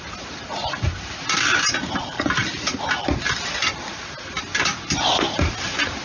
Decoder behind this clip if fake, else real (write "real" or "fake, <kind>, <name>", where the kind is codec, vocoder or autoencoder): real